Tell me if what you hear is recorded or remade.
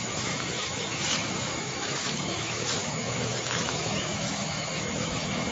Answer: remade